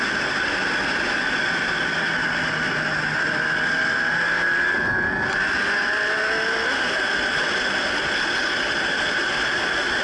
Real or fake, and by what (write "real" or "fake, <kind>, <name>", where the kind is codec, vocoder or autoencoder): real